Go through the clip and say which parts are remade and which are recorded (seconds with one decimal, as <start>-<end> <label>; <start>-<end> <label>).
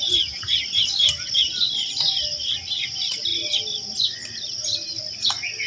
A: 0.0-5.7 recorded